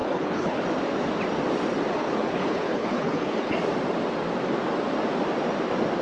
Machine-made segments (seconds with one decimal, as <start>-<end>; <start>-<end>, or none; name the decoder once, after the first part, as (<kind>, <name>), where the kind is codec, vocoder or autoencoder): 0.0-0.6 (codec, HILCodec); 1.9-3.5